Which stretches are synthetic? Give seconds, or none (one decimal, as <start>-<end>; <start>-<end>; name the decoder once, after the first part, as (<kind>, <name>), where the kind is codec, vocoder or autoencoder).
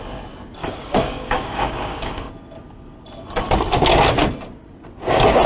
0.6-2.3 (codec, DAC)